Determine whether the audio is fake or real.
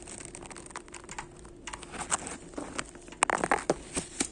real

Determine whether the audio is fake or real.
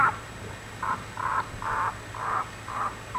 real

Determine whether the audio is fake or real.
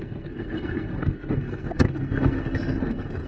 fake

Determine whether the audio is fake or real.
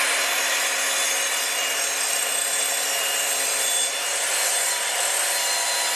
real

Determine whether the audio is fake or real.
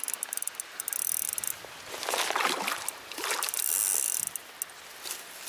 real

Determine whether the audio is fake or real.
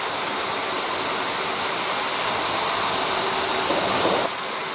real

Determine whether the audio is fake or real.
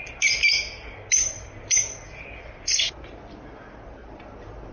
real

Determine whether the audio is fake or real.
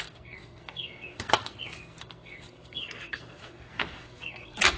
fake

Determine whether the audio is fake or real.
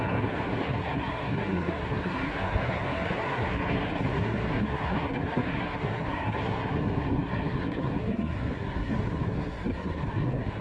fake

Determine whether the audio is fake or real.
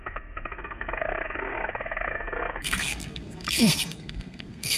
fake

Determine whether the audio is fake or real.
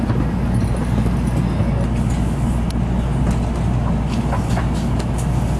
real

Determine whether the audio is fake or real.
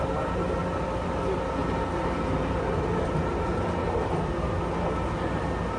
real